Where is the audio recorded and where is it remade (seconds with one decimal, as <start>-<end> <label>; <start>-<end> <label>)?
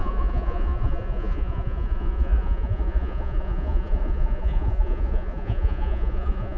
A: 0.0-6.6 remade